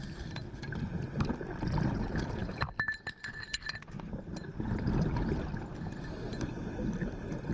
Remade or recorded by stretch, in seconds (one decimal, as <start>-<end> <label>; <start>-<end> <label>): 0.0-7.5 recorded